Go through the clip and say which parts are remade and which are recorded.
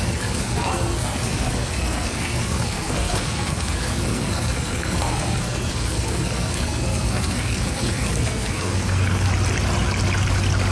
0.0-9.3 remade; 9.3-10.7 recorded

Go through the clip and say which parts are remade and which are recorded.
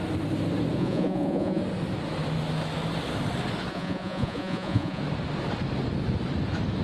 0.0-0.8 recorded; 0.8-1.6 remade; 1.6-3.7 recorded; 3.7-5.0 remade; 5.0-6.8 recorded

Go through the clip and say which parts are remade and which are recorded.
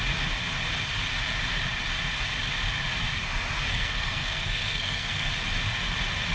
0.0-3.7 recorded; 3.7-5.3 remade; 5.3-6.3 recorded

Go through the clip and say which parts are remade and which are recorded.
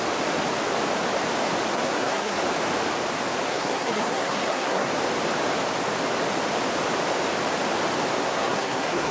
0.0-1.7 recorded; 1.7-2.4 remade; 2.4-3.5 recorded; 3.5-4.9 remade; 4.9-8.2 recorded; 8.2-9.1 remade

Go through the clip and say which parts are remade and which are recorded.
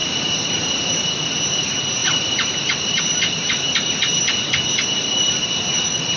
0.0-0.9 remade; 0.9-2.0 recorded; 2.0-3.0 remade; 3.0-6.2 recorded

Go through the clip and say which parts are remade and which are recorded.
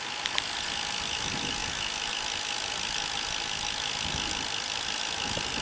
0.0-5.6 recorded